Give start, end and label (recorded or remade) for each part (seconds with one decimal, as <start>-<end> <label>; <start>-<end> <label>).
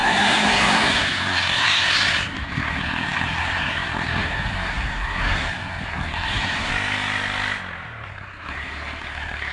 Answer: 0.0-6.7 remade; 6.7-8.1 recorded; 8.1-9.5 remade